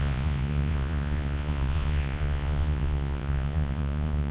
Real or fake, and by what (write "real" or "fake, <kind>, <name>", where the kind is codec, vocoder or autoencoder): fake, vocoder, Vocos